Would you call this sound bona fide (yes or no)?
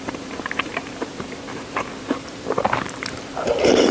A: no